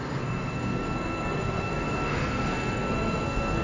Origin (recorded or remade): remade